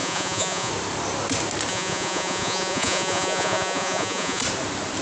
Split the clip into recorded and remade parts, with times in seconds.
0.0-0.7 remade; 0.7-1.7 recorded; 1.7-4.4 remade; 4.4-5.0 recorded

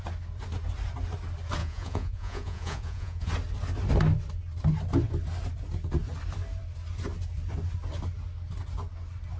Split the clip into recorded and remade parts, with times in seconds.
0.0-1.6 recorded; 1.6-3.3 remade; 3.3-9.4 recorded

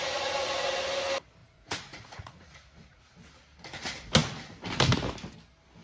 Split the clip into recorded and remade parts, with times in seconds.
0.0-0.7 remade; 0.7-1.4 recorded; 1.4-3.0 remade; 3.0-5.8 recorded

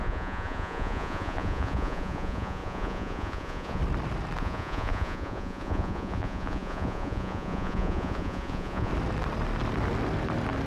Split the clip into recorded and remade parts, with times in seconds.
0.0-3.8 remade; 3.8-4.4 recorded; 4.4-8.9 remade; 8.9-10.7 recorded